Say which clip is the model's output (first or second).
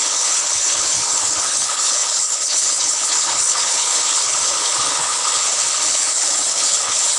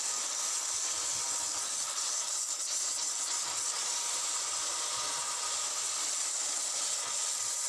first